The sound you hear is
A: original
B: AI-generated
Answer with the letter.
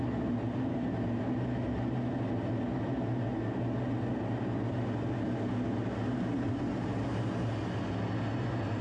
A